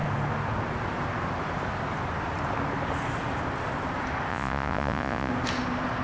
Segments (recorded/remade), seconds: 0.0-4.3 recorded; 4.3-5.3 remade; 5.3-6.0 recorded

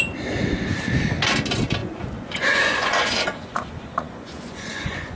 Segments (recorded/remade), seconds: 0.0-1.8 recorded; 1.8-5.2 remade

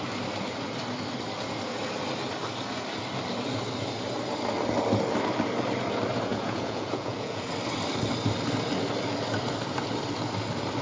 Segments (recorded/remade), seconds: 0.0-6.3 recorded; 6.3-7.5 remade; 7.5-10.8 recorded